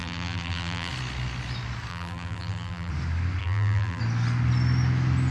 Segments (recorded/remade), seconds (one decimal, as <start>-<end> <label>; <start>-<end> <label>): 0.0-0.9 remade; 0.9-1.9 recorded; 1.9-2.9 remade; 2.9-3.4 recorded; 3.4-4.0 remade; 4.0-5.3 recorded